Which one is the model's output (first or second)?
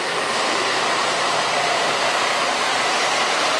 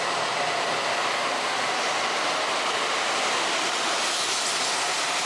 first